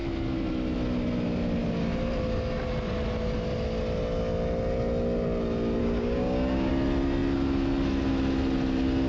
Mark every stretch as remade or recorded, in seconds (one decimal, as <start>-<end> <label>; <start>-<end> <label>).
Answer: 0.0-5.8 recorded; 5.8-6.7 remade; 6.7-9.1 recorded